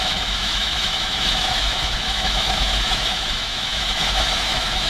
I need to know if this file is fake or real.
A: fake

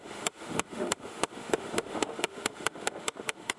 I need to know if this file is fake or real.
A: fake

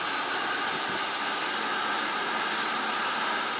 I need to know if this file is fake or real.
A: real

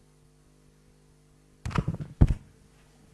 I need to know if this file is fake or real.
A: real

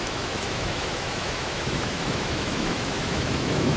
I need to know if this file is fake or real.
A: fake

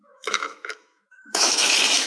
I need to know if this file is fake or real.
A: fake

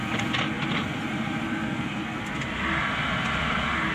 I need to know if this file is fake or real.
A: real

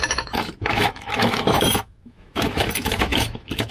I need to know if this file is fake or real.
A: fake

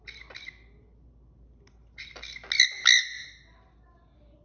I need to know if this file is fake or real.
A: real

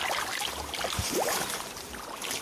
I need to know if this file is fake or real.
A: real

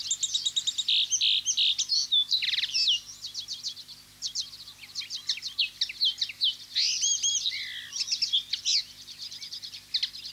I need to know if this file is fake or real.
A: real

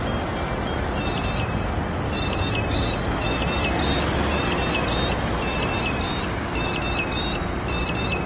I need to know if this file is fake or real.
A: real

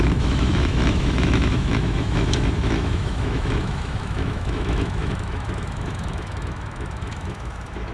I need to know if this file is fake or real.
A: fake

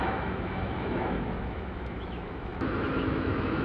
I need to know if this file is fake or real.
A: fake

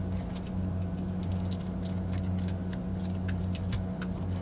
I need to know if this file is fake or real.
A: real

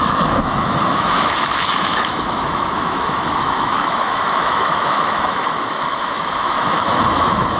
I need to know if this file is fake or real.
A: fake